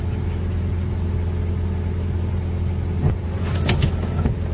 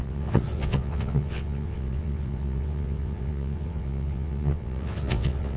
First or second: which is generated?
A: second